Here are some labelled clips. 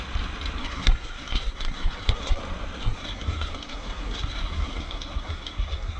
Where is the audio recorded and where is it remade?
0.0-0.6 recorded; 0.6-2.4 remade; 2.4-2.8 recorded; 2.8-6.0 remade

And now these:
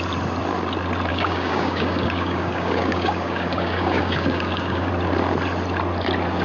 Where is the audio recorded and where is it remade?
0.0-1.1 recorded; 1.1-4.9 remade; 4.9-6.4 recorded

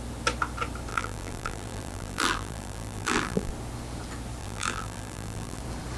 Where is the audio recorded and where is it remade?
0.0-0.9 recorded; 0.9-3.5 remade; 3.5-4.4 recorded; 4.4-5.6 remade; 5.6-6.0 recorded

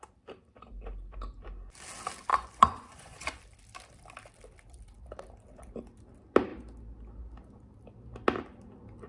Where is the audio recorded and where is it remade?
0.0-2.3 recorded; 2.3-3.4 remade; 3.4-9.1 recorded